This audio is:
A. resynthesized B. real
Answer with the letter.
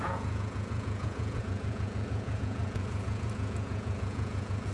A